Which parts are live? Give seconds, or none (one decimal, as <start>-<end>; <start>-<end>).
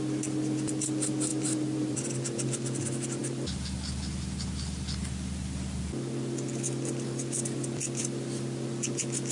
0.0-1.3; 2.0-9.3